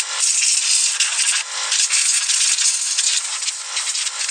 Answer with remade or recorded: recorded